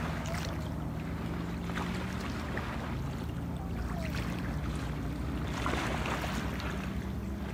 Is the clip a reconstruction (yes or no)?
no